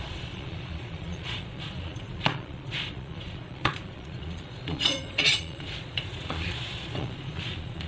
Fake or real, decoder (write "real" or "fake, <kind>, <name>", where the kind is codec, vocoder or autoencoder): fake, vocoder, Vocos